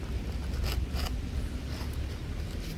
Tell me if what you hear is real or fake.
real